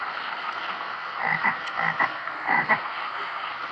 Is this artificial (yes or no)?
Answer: yes